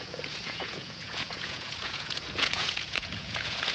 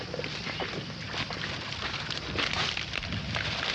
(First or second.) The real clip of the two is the second